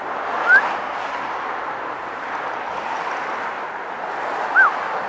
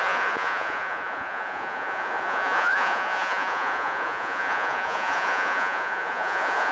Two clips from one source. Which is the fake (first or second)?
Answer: second